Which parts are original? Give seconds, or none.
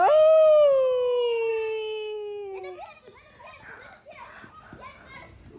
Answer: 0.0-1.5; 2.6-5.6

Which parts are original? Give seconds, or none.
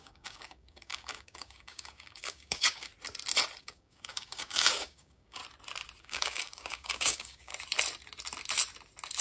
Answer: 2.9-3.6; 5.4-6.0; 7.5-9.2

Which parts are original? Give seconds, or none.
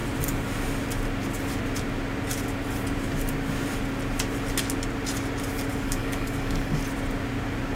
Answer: 0.0-5.7; 6.8-7.7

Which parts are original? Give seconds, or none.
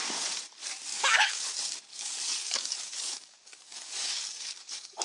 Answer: 0.0-0.9; 1.5-1.9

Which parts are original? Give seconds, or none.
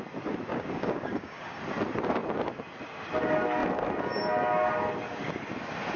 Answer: 0.0-0.5; 1.6-6.0